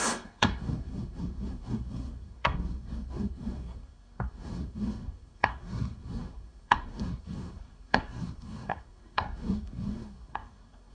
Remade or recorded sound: remade